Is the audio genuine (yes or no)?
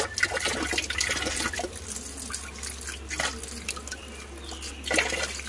yes